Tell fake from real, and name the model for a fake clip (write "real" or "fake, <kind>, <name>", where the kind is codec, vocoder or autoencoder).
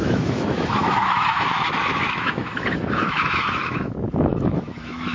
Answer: fake, autoencoder, DAC-VAE